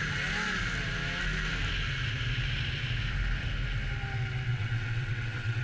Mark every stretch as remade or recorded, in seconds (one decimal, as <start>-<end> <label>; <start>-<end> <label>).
0.0-4.5 recorded; 4.5-5.6 remade